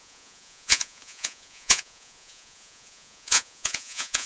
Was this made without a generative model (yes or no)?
no